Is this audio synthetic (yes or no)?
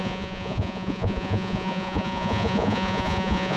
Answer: yes